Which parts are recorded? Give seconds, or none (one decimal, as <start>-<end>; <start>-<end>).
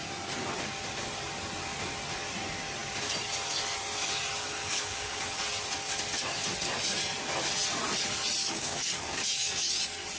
0.0-4.6; 5.4-8.4; 9.7-10.2